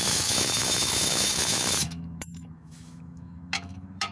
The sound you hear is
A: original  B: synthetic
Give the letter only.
B